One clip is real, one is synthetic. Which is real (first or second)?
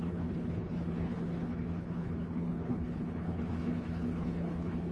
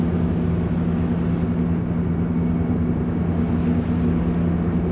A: second